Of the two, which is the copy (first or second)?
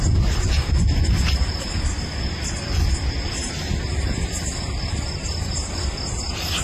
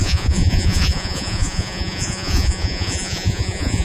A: second